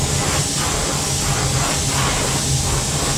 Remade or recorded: recorded